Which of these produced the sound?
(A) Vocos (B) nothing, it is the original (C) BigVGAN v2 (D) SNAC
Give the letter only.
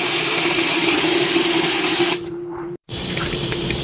C